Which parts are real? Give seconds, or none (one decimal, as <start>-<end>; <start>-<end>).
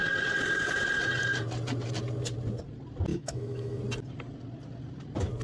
0.0-3.1; 3.8-5.4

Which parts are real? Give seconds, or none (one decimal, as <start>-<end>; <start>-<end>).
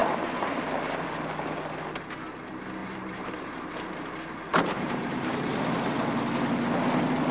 0.6-2.8; 3.4-4.5; 6.0-7.3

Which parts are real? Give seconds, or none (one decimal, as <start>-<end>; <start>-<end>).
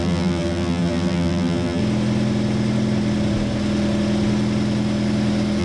1.8-5.6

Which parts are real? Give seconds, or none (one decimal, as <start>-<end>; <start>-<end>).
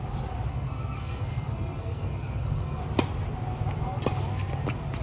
0.0-0.5; 2.8-5.0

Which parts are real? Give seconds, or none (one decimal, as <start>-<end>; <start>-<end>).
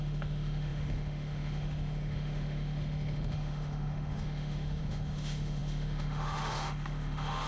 none